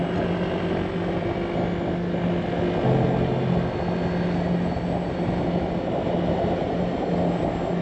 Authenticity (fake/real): real